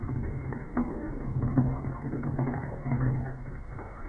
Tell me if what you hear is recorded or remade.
remade